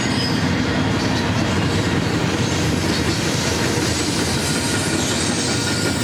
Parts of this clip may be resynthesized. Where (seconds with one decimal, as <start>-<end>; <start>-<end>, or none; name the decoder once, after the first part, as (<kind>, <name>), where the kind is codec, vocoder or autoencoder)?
2.1-4.3 (vocoder, BigVGAN v2)